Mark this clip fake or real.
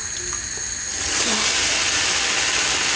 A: real